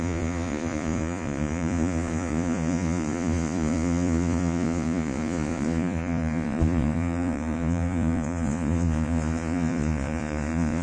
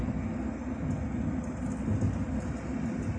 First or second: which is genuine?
second